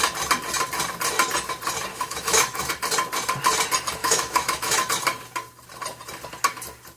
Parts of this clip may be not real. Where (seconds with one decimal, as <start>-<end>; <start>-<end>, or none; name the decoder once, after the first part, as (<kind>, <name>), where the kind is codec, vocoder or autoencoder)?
1.9-2.7 (autoencoder, DAC-VAE); 4.0-4.9